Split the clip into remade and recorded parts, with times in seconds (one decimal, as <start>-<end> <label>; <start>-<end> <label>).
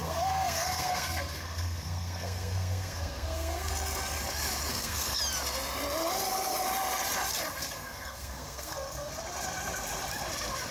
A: 0.0-3.7 remade; 3.7-4.7 recorded; 4.7-5.2 remade; 5.2-7.6 recorded; 7.6-9.1 remade; 9.1-10.7 recorded